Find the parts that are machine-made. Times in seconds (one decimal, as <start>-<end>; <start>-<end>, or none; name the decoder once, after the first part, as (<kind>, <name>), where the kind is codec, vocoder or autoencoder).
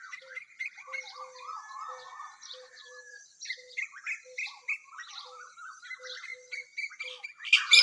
none